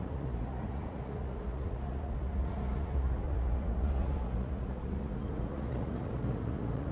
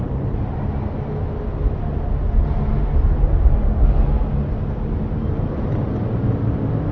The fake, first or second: first